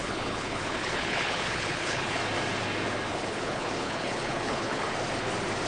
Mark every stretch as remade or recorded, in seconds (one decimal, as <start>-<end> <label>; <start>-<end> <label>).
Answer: 0.0-2.2 remade; 2.2-3.1 recorded; 3.1-4.9 remade; 4.9-5.7 recorded

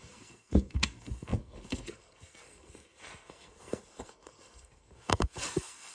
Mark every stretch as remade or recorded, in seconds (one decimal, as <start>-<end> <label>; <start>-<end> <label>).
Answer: 0.0-5.9 remade

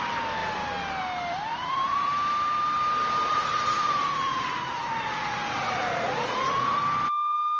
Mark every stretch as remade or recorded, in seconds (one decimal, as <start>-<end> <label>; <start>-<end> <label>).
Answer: 0.0-1.5 recorded; 1.5-2.1 remade; 2.1-3.3 recorded; 3.3-6.8 remade; 6.8-7.6 recorded

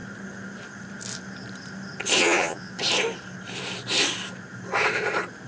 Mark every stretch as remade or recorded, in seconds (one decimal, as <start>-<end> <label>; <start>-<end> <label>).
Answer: 0.0-2.2 recorded; 2.2-2.8 remade; 2.8-5.5 recorded

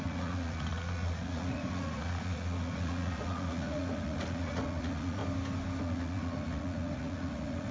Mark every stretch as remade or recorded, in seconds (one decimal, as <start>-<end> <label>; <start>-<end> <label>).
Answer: 0.0-5.2 remade; 5.2-5.8 recorded; 5.8-7.7 remade